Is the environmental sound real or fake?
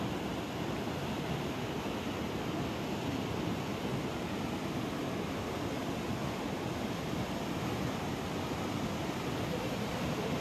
real